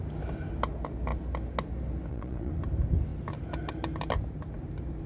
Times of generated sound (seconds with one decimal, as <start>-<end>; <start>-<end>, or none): 2.1-2.6